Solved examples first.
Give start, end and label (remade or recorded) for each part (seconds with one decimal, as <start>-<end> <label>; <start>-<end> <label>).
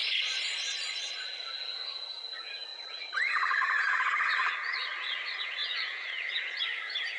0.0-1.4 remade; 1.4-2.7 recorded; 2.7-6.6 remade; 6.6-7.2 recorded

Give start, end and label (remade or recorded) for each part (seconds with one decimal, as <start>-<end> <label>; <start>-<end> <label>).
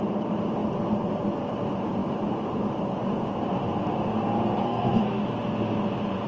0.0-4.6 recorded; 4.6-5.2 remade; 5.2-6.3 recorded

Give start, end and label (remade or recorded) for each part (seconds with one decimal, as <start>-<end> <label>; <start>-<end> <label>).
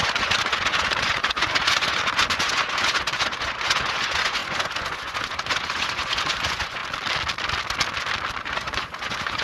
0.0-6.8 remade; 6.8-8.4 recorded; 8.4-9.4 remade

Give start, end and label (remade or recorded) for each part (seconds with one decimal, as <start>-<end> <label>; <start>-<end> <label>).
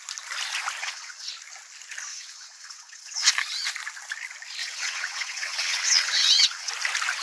0.0-0.8 recorded; 0.8-1.3 remade; 1.3-2.1 recorded; 2.1-3.3 remade; 3.3-4.6 recorded; 4.6-6.7 remade; 6.7-7.2 recorded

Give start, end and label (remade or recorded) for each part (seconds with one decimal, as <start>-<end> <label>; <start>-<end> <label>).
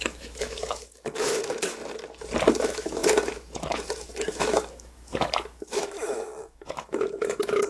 0.0-1.8 remade; 1.8-2.5 recorded; 2.5-7.7 remade